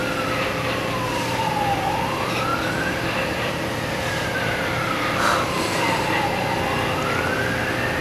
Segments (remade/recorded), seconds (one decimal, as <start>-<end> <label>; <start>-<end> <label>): 0.0-1.2 remade; 1.2-2.5 recorded; 2.5-6.4 remade; 6.4-8.0 recorded